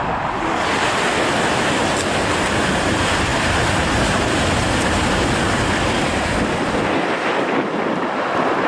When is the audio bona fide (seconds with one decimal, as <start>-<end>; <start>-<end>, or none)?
0.0-3.3; 4.2-8.7